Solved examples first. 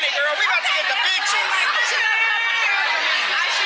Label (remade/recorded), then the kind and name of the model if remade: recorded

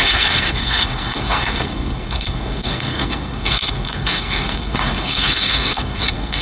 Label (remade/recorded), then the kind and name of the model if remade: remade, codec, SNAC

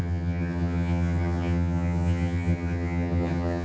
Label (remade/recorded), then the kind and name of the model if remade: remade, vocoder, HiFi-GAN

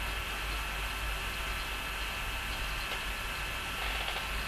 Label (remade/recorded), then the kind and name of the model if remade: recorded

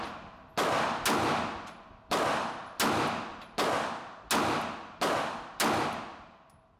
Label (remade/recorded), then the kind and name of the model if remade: recorded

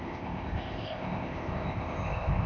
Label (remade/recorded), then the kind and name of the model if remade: remade, codec, ZipCodec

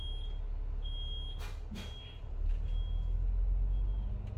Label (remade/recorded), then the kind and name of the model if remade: recorded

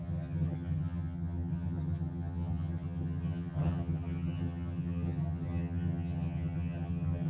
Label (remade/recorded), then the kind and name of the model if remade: remade, vocoder, HiFi-GAN